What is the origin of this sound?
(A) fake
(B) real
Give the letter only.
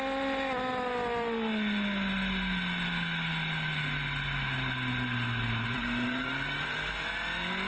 B